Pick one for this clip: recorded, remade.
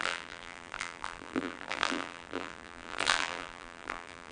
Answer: remade